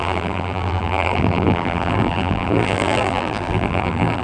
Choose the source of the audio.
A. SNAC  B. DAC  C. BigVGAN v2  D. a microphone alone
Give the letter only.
C